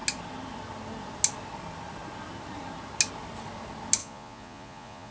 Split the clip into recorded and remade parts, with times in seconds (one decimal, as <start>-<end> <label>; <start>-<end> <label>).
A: 0.0-4.0 recorded; 4.0-5.1 remade

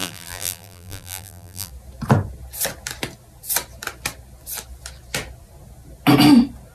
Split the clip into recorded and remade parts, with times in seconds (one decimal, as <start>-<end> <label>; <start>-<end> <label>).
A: 0.0-1.7 remade; 1.7-6.7 recorded

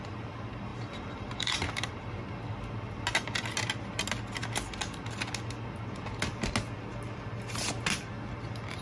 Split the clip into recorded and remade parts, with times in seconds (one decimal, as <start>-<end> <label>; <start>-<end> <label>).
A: 0.0-0.7 recorded; 0.7-2.2 remade; 2.2-8.8 recorded